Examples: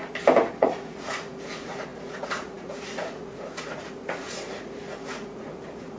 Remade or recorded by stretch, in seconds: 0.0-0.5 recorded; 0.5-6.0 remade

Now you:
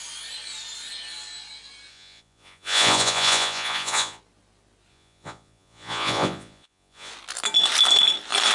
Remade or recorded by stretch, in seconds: 0.0-1.9 recorded; 1.9-4.2 remade; 4.2-4.9 recorded; 4.9-7.1 remade; 7.1-8.5 recorded

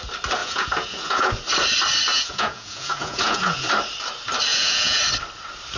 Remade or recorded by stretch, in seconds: 0.0-0.4 recorded; 0.4-1.3 remade; 1.3-2.1 recorded; 2.1-3.7 remade; 3.7-4.5 recorded; 4.5-5.0 remade; 5.0-5.8 recorded